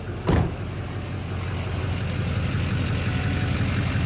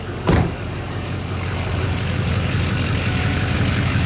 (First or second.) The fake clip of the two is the second